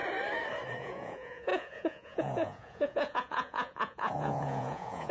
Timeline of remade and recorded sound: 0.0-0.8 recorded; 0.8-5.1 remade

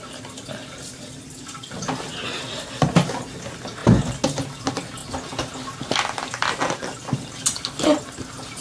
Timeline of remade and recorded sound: 0.0-8.6 recorded

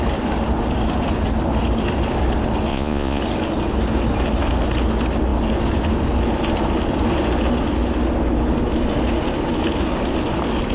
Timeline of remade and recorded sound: 0.0-2.7 recorded; 2.7-3.2 remade; 3.2-10.7 recorded

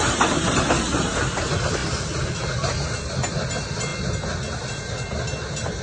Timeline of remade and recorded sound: 0.0-5.8 recorded